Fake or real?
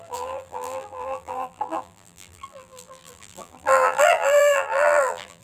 fake